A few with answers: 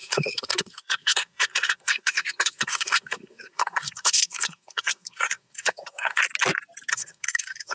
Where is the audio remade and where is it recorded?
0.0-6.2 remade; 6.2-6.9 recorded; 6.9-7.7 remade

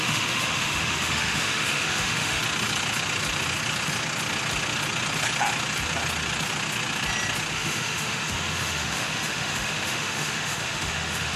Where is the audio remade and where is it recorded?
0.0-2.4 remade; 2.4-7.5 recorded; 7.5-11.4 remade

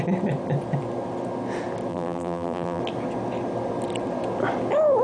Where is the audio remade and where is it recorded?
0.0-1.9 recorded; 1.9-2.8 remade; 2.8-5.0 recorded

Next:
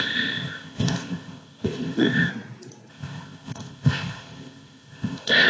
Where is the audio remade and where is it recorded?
0.0-2.3 remade; 2.3-2.9 recorded; 2.9-5.5 remade

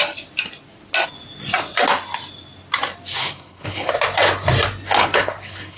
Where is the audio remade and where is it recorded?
0.0-3.2 recorded; 3.2-3.9 remade; 3.9-5.0 recorded; 5.0-5.8 remade

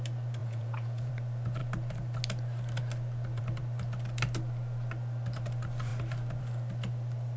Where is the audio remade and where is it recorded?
0.0-0.4 recorded; 0.4-1.1 remade; 1.1-7.4 recorded